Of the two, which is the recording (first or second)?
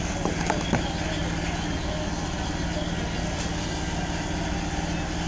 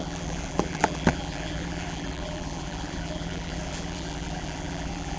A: first